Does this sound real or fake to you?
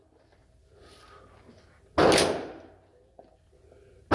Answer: real